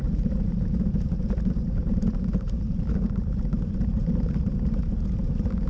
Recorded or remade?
remade